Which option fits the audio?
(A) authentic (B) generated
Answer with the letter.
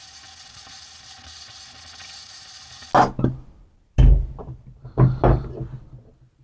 A